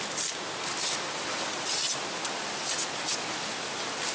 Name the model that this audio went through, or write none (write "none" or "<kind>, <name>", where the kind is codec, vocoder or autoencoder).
none